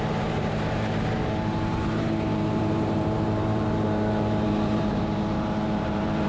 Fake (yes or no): yes